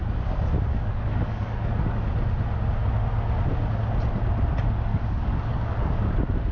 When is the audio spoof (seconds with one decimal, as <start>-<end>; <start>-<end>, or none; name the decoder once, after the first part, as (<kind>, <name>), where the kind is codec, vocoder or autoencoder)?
0.7-2.0 (codec, DAC); 4.9-6.1